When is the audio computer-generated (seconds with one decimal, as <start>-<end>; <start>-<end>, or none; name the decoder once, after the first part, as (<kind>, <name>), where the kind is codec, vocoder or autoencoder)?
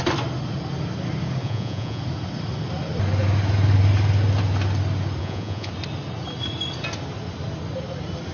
1.4-2.0 (vocoder, Vocos); 5.2-5.7